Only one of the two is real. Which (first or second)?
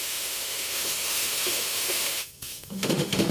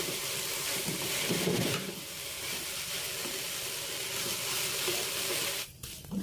second